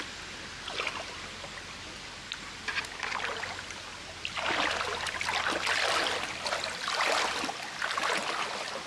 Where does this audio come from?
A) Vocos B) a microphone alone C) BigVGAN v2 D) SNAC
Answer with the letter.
B